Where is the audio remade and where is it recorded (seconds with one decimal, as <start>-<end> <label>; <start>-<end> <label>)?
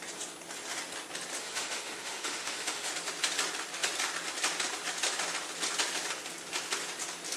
0.0-1.4 recorded; 1.4-2.9 remade; 2.9-7.4 recorded